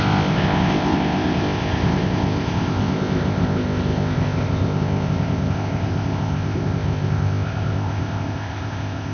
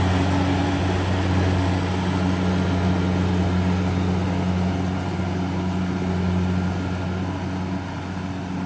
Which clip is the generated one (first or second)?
first